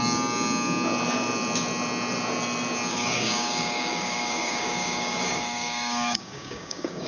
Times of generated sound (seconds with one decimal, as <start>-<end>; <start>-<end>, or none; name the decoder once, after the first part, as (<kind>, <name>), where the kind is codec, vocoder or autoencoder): 2.9-7.1 (codec, DAC)